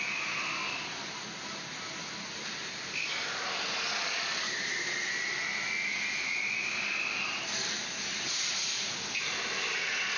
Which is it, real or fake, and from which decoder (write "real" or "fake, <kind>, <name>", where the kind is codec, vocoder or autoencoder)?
real